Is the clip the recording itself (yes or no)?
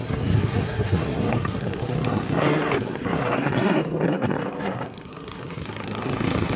no